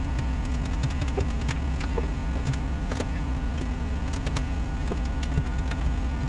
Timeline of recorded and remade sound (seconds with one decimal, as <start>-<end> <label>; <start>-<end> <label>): 0.0-6.3 recorded